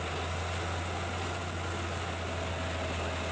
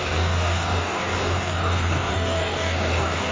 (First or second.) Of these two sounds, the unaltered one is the first